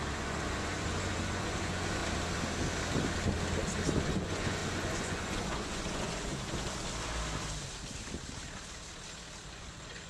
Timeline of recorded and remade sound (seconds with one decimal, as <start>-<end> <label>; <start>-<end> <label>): 0.0-2.0 remade; 2.0-4.0 recorded; 4.0-6.3 remade; 6.3-9.5 recorded; 9.5-10.1 remade